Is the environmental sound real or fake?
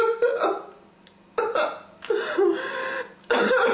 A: real